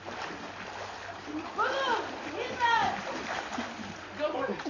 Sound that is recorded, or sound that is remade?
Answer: recorded